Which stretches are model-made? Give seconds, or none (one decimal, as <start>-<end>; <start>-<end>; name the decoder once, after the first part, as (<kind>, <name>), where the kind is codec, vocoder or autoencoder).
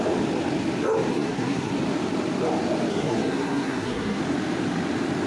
1.1-1.7 (codec, SNAC); 2.9-4.2